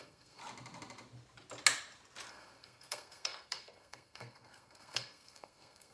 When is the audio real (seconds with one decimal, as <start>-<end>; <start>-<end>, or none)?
0.4-2.3